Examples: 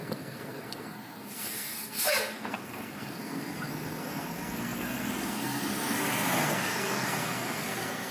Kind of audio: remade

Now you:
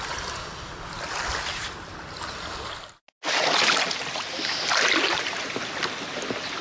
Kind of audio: recorded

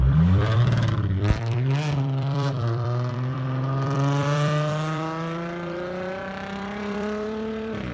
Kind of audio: remade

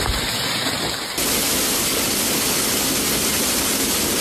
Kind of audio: recorded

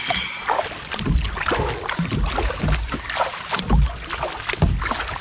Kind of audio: recorded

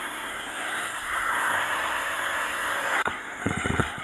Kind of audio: remade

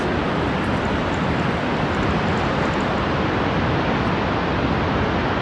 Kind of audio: recorded